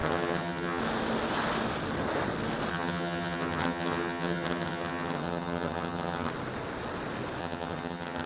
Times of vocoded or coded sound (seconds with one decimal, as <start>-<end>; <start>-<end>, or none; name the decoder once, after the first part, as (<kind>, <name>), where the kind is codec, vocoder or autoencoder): 0.0-0.8 (vocoder, HiFi-GAN); 2.7-6.3; 7.4-8.3